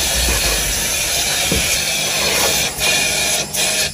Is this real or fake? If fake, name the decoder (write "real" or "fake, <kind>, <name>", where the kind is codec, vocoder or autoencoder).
real